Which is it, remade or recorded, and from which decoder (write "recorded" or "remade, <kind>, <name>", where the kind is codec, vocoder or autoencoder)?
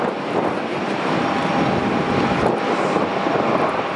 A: recorded